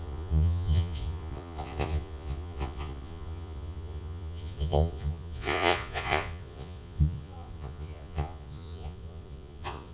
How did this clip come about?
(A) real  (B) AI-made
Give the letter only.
B